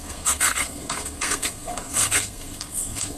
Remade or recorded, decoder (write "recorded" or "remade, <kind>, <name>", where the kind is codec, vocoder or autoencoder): remade, codec, SNAC